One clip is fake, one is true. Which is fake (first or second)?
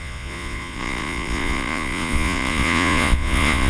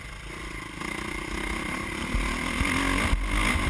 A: first